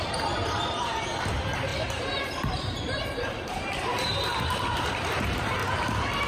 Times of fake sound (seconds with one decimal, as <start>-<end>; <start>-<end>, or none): 0.0-5.6